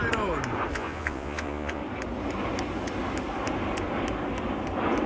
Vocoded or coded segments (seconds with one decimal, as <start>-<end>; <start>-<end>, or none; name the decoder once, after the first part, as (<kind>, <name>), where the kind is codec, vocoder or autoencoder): 0.7-1.8 (vocoder, Vocos)